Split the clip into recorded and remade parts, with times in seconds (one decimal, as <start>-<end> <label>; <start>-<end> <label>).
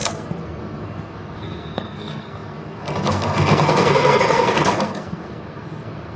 0.0-6.2 remade